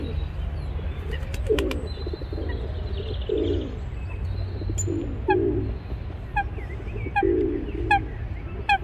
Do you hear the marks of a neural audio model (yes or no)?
no